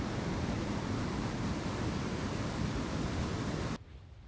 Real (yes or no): yes